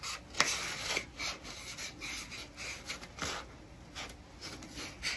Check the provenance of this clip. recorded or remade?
recorded